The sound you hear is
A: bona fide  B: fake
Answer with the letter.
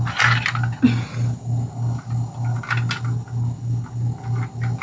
A